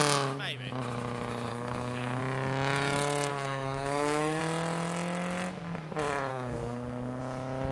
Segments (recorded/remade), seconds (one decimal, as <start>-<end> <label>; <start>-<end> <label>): 0.0-1.5 recorded; 1.5-2.2 remade; 2.2-3.3 recorded; 3.3-4.4 remade; 4.4-6.3 recorded; 6.3-7.2 remade; 7.2-7.7 recorded